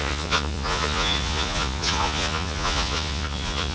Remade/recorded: remade